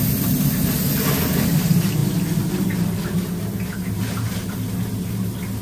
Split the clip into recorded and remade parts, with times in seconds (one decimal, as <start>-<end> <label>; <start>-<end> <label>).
0.0-5.6 recorded

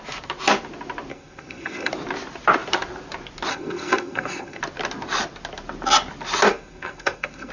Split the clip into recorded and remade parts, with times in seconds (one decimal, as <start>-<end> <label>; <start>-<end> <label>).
0.0-1.1 recorded; 1.1-1.9 remade; 1.9-3.5 recorded; 3.5-4.6 remade; 4.6-6.5 recorded; 6.5-7.5 remade

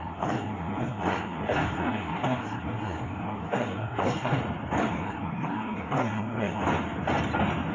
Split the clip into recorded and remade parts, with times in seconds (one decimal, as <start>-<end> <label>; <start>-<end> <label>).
0.0-4.4 remade; 4.4-4.9 recorded; 4.9-6.6 remade; 6.6-7.7 recorded

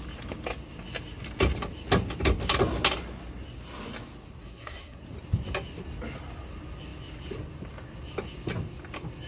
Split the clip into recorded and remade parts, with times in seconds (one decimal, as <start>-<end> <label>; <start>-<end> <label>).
0.0-4.4 recorded; 4.4-5.0 remade; 5.0-9.3 recorded

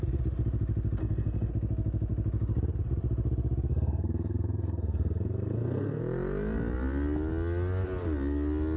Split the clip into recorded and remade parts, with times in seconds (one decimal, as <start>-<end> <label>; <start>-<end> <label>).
0.0-1.0 recorded; 1.0-1.5 remade; 1.5-3.7 recorded; 3.7-6.0 remade; 6.0-8.8 recorded

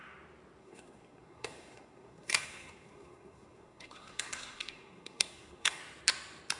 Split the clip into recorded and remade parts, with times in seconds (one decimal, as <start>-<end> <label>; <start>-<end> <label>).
0.0-0.6 recorded; 0.6-5.8 remade; 5.8-6.6 recorded

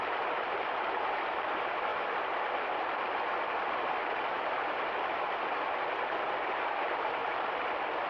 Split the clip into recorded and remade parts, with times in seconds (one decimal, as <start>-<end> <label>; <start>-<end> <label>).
0.0-8.1 recorded

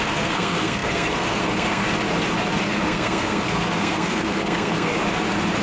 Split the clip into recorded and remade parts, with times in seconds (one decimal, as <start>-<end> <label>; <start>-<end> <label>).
0.0-1.8 remade; 1.8-2.6 recorded; 2.6-4.9 remade; 4.9-5.6 recorded